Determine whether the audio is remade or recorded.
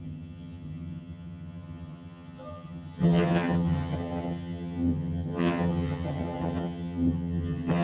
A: remade